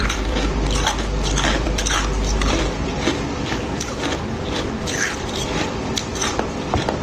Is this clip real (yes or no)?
no